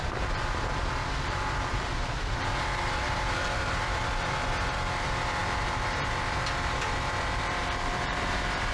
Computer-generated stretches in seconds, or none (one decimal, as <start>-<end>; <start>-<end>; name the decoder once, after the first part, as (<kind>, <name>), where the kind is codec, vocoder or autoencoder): 0.0-8.7 (vocoder, BigVGAN v2)